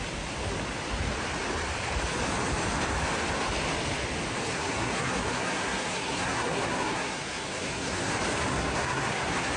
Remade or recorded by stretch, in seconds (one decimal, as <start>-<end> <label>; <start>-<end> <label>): 0.0-4.5 recorded; 4.5-8.1 remade; 8.1-8.5 recorded; 8.5-9.6 remade